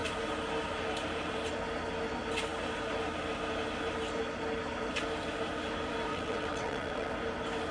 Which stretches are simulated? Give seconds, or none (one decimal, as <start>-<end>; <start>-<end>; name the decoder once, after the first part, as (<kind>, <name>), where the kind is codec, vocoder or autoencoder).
6.1-7.1 (vocoder, WaveNeXt)